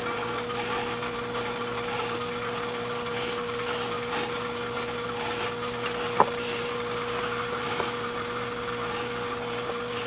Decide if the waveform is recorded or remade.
recorded